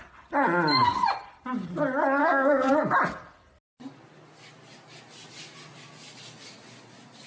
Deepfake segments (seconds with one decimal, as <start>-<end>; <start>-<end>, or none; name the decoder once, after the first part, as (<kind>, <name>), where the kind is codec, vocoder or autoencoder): 2.2-2.7 (codec, SNAC)